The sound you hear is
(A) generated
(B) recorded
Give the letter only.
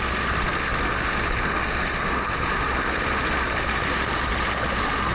B